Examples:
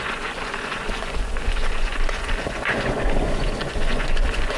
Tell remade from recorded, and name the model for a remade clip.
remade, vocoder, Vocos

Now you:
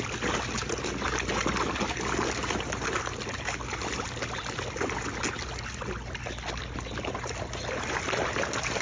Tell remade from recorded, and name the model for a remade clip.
recorded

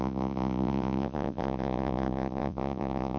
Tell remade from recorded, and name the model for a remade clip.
remade, vocoder, Vocos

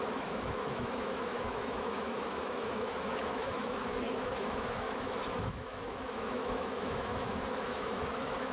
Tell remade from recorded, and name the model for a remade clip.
remade, autoencoder, DAC-VAE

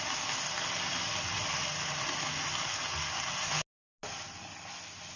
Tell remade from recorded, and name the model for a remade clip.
recorded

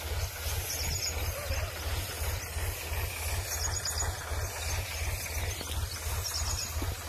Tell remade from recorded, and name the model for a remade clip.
recorded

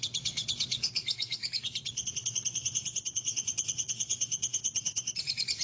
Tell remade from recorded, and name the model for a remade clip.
remade, vocoder, Vocos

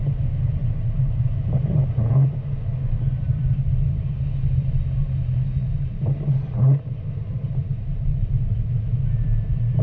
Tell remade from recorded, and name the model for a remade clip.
remade, vocoder, BigVGAN v2